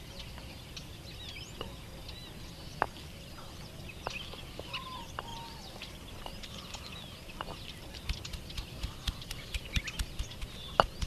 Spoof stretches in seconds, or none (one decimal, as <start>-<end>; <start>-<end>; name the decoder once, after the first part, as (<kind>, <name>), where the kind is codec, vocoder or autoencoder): 5.3-10.2 (vocoder, BigVGAN v2)